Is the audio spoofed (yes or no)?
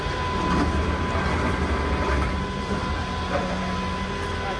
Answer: no